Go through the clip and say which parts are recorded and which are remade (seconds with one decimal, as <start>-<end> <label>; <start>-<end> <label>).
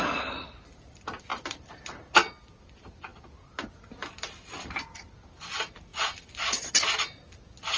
0.0-1.3 recorded; 1.3-2.0 remade; 2.0-7.8 recorded